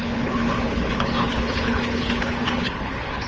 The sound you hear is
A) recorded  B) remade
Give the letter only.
B